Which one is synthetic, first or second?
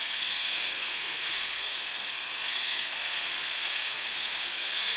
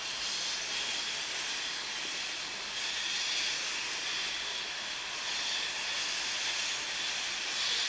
first